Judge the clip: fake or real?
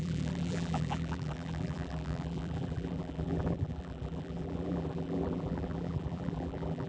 fake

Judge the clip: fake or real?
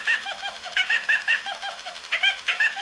fake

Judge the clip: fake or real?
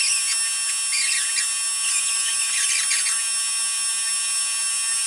real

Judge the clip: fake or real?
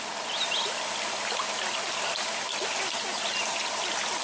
real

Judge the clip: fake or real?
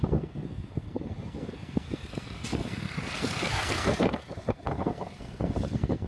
fake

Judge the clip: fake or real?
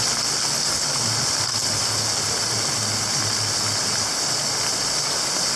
real